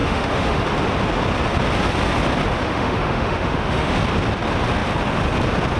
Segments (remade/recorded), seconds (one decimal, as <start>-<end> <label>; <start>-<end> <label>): 0.0-0.6 remade; 0.6-2.7 recorded; 2.7-4.0 remade; 4.0-5.8 recorded